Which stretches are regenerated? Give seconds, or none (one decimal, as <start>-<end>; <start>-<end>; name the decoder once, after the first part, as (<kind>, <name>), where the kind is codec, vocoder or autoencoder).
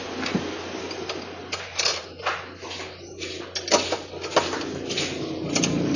1.7-2.2 (vocoder, BigVGAN v2)